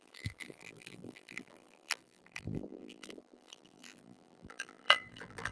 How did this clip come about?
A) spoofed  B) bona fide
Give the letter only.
A